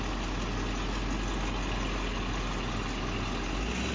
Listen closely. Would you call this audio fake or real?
real